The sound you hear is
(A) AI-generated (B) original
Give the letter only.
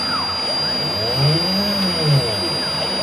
B